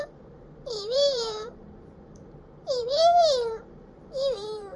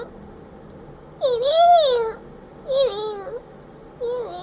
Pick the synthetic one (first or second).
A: first